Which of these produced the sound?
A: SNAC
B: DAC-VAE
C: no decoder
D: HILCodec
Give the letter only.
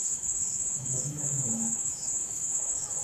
B